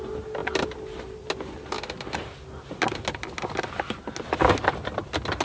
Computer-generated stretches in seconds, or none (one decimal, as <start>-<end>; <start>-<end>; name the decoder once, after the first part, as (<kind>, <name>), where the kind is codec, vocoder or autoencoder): none